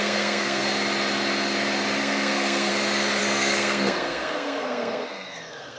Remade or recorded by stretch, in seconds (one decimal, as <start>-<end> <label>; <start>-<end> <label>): 0.0-0.6 remade; 0.6-2.0 recorded; 2.0-2.7 remade; 2.7-3.2 recorded; 3.2-5.8 remade